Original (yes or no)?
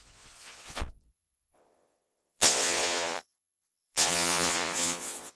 no